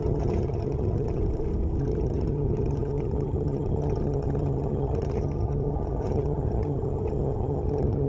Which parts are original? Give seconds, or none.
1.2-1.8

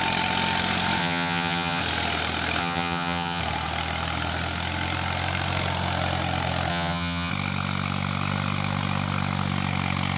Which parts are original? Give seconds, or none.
0.0-1.0; 1.8-2.6; 3.4-6.7; 7.3-10.2

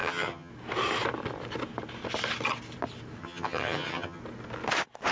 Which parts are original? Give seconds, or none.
0.5-3.2; 4.2-5.1